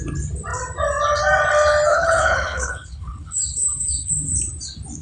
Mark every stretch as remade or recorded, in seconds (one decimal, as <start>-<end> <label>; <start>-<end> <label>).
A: 0.0-1.9 recorded; 1.9-4.1 remade; 4.1-5.0 recorded